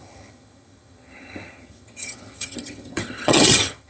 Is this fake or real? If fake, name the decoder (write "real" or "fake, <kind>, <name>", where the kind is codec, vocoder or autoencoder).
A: fake, vocoder, HiFi-GAN